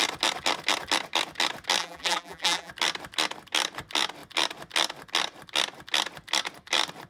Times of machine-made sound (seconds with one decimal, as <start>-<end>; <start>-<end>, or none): 1.8-2.7